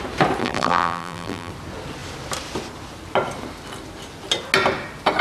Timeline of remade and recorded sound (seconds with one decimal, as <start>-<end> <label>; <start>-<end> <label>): 0.0-0.4 recorded; 0.4-1.5 remade; 1.5-5.2 recorded